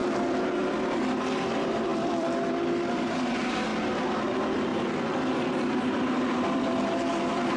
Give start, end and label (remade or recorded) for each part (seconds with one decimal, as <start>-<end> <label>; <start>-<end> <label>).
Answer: 0.0-0.6 recorded; 0.6-3.7 remade; 3.7-4.2 recorded; 4.2-7.6 remade

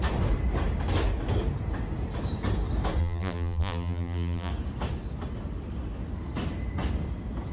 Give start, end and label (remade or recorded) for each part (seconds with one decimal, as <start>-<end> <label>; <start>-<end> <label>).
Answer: 0.0-3.0 recorded; 3.0-4.5 remade; 4.5-7.5 recorded

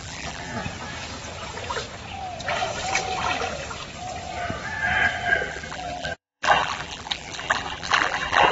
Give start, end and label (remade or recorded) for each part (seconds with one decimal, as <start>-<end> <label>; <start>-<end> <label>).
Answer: 0.0-0.5 remade; 0.5-5.3 recorded; 5.3-8.5 remade

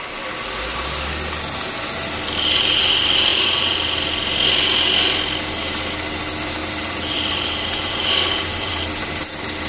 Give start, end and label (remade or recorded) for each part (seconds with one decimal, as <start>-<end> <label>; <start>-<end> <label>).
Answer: 0.0-3.3 recorded; 3.3-4.1 remade; 4.1-6.6 recorded; 6.6-8.7 remade; 8.7-9.7 recorded